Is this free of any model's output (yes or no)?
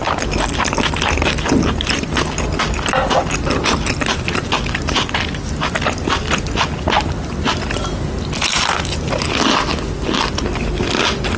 yes